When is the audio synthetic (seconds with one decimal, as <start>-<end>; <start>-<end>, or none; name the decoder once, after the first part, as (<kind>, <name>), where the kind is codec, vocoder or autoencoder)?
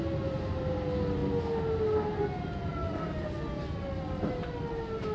none